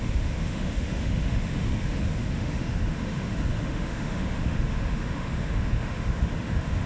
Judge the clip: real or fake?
fake